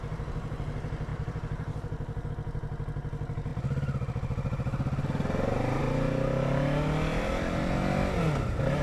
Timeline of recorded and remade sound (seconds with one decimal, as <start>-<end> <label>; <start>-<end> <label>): 0.0-1.1 recorded; 1.1-2.3 remade; 2.3-8.8 recorded